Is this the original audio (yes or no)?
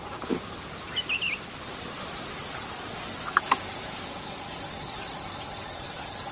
yes